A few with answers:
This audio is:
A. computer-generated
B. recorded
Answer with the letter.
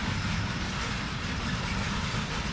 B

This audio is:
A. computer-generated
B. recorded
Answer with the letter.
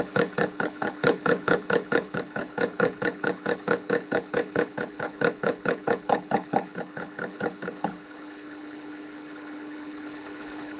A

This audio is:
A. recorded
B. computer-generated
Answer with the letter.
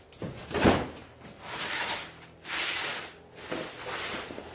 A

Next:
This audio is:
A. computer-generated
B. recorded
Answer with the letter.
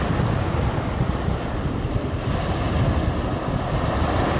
B